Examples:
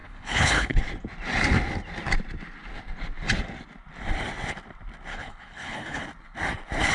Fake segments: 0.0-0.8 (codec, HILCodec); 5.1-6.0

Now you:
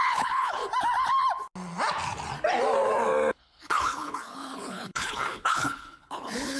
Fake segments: 0.0-0.6 (codec, HILCodec); 3.3-6.6

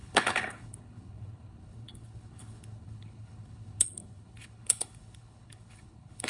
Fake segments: 0.0-6.3 (codec, HILCodec)

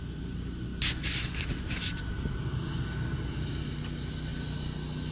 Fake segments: none

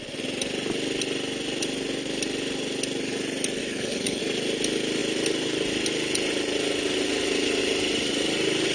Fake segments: 3.6-4.2 (codec, HILCodec)

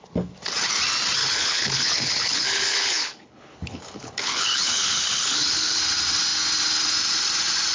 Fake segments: 1.2-5.8 (codec, HILCodec)